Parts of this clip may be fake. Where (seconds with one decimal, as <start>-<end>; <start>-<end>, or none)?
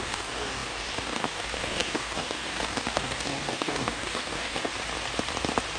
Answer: 0.0-4.7